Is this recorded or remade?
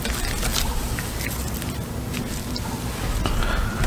recorded